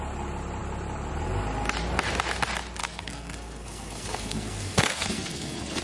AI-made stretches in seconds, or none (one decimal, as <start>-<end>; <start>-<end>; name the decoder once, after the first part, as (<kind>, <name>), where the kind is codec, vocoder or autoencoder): 2.8-5.8 (codec, SNAC)